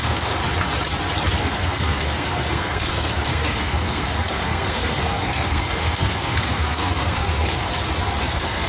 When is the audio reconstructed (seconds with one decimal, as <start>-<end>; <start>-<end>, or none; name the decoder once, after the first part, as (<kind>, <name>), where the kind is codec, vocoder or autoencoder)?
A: 0.0-0.4 (codec, SNAC); 1.4-7.7; 8.2-8.7